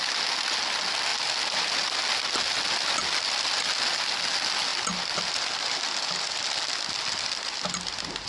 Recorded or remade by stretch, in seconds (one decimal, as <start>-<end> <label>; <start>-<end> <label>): 0.0-8.3 recorded